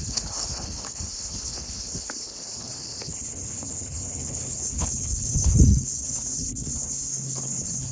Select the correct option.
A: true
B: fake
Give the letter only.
B